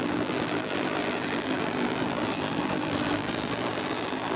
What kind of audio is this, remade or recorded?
remade